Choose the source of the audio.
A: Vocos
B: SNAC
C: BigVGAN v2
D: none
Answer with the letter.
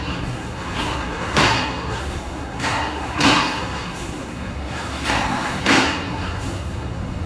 B